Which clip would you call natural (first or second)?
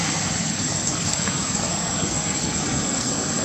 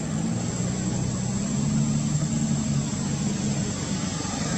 second